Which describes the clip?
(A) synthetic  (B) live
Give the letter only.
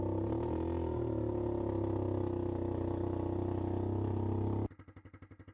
B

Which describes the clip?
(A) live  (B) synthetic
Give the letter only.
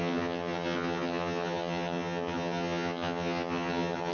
B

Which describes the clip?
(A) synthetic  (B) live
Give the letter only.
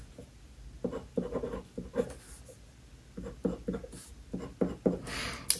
B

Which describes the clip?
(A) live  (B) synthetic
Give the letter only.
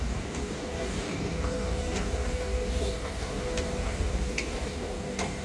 B